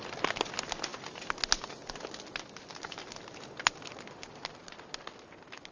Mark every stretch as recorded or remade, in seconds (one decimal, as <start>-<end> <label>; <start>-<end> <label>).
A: 0.0-5.7 recorded